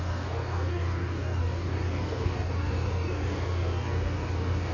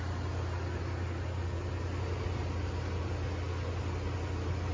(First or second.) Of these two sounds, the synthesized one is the first